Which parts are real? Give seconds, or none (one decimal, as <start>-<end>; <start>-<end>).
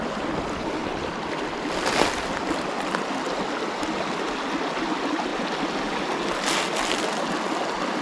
0.0-8.0